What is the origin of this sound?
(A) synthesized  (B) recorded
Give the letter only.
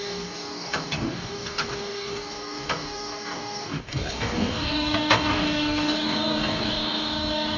A